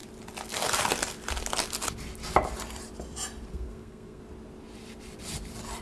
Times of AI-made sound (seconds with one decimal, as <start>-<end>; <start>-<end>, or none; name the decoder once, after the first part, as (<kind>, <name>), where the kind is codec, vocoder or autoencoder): 3.5-4.2 (codec, SNAC)

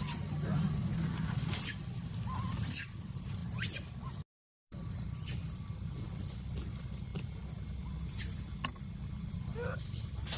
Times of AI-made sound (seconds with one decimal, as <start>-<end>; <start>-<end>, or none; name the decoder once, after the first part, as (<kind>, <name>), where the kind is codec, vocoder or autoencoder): 0.0-3.4 (vocoder, BigVGAN v2); 4.3-7.1; 10.0-10.4

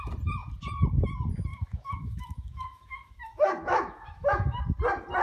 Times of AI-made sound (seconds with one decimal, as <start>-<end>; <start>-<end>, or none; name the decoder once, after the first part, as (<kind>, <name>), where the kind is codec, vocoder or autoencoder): 1.5-4.6 (autoencoder, DAC-VAE)

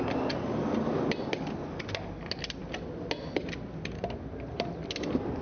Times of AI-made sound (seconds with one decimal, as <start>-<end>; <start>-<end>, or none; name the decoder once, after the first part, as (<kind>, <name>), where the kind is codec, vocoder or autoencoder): none

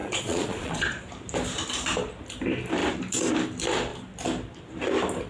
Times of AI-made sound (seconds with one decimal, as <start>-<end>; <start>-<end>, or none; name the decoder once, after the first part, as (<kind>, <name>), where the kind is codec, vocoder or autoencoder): 0.0-1.1 (vocoder, Vocos)

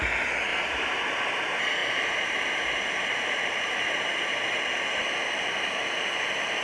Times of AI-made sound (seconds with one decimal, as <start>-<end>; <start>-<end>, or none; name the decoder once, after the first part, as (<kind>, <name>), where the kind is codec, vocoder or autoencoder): 0.5-1.0 (vocoder, BigVGAN v2); 1.8-5.8

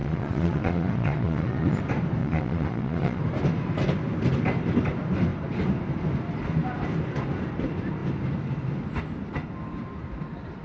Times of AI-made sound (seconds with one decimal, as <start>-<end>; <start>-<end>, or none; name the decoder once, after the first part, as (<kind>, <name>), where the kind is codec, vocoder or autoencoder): 0.0-1.8 (vocoder, Vocos); 2.2-3.2

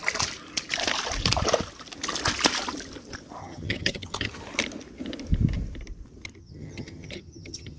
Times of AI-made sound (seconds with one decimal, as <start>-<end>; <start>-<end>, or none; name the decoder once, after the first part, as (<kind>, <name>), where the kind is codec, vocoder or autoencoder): 3.4-4.4 (vocoder, HiFi-GAN); 6.4-7.8